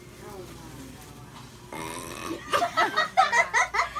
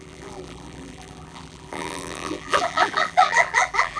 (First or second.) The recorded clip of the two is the first